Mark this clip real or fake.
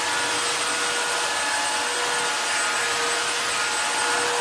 real